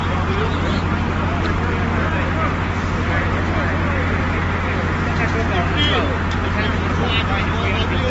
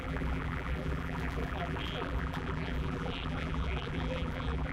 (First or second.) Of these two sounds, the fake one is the second